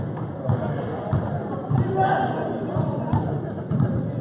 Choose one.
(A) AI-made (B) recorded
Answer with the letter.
B